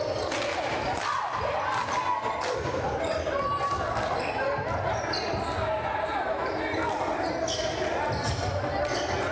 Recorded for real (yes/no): yes